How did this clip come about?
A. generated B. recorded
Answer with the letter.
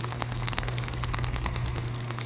A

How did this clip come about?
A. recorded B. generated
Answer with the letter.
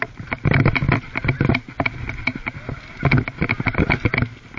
A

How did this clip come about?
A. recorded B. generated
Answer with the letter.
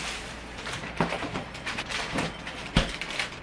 B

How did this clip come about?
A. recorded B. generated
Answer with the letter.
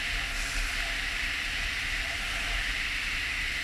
B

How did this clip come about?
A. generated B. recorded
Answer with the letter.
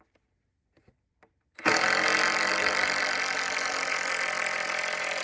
B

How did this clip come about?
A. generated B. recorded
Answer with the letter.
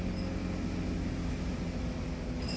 B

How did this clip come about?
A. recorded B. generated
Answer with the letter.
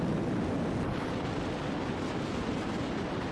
A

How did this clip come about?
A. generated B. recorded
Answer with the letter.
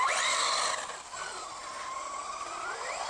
B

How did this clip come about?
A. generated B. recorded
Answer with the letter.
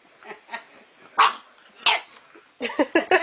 B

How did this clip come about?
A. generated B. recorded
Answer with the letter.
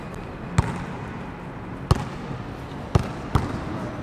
B